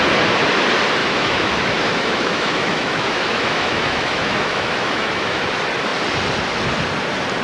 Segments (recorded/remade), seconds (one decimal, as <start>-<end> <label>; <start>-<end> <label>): 0.0-1.0 recorded; 1.0-5.4 remade; 5.4-7.4 recorded